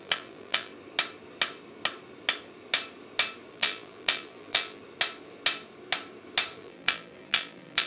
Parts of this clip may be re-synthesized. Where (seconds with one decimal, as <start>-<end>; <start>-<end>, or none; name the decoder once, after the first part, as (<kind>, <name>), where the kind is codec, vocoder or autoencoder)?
0.0-0.7 (vocoder, BigVGAN v2); 3.5-4.8; 6.5-7.9